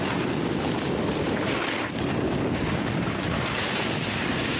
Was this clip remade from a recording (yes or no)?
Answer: no